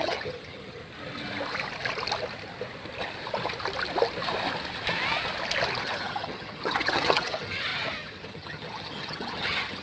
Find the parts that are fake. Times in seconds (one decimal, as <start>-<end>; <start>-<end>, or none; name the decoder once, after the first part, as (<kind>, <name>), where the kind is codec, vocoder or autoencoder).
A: 0.0-0.8 (vocoder, HiFi-GAN); 5.8-9.8